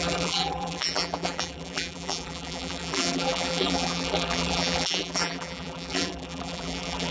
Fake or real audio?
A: fake